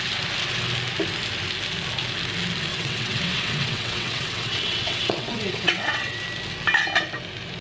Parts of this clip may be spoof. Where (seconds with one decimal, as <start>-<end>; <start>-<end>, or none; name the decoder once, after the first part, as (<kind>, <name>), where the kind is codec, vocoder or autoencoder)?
2.7-6.2 (vocoder, WaveNeXt)